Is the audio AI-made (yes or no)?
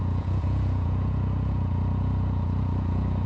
yes